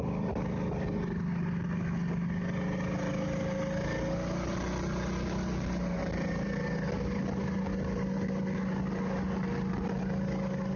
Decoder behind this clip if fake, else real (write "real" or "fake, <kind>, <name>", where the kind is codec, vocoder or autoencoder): real